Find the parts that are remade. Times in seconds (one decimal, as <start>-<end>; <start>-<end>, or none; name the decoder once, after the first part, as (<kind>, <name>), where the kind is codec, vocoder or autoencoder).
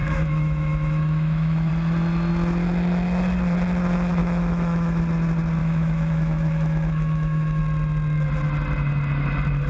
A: 0.0-1.7 (autoencoder, DAC-VAE); 4.2-5.0; 5.6-7.6